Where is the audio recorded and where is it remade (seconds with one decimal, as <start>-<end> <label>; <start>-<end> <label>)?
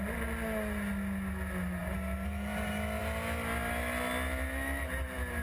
0.0-5.4 recorded